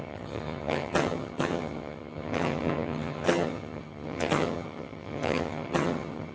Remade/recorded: remade